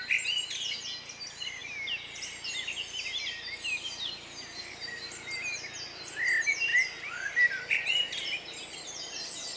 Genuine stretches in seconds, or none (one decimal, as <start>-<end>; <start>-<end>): 0.0-9.6